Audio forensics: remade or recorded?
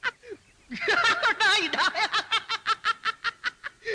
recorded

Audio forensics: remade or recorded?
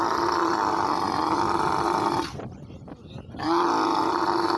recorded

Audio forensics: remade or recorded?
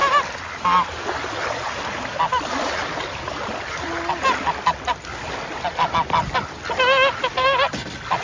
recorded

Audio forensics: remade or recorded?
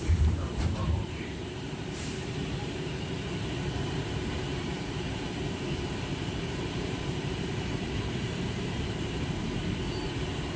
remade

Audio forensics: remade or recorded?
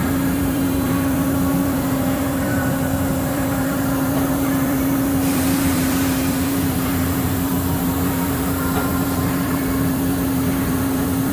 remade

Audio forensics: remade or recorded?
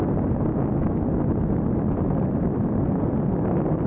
recorded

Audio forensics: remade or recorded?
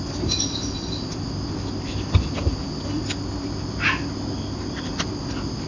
recorded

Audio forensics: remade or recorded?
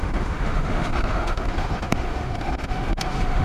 remade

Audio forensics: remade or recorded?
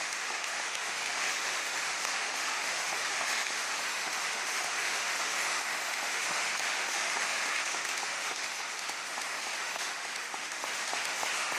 remade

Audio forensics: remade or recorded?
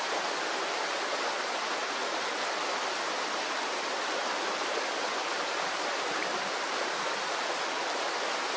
recorded